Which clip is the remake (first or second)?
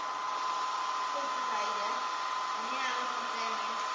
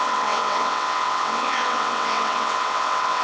second